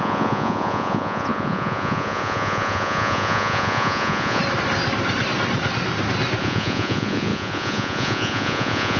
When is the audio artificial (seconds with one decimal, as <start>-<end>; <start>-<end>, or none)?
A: 0.0-4.4; 6.4-9.0

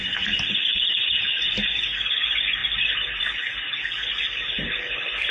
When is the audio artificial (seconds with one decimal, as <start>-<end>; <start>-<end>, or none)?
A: none

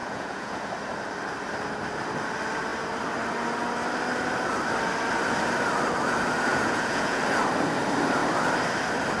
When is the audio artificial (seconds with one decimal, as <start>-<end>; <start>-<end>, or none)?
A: 0.0-0.7; 6.5-7.2

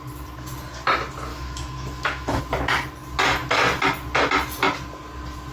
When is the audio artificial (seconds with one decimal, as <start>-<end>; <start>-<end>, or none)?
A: 1.3-2.4

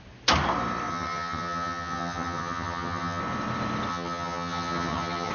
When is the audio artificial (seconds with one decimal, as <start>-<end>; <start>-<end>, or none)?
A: 0.9-3.2; 3.9-5.3

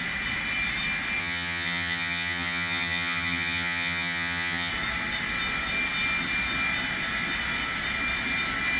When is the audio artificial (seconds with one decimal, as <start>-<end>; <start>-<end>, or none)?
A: 1.2-4.7

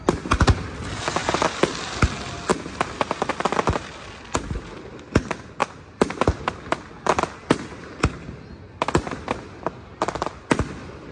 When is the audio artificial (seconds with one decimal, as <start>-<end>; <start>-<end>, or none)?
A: 1.2-1.7; 2.5-3.3